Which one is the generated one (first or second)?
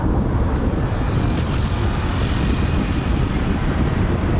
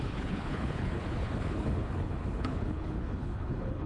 second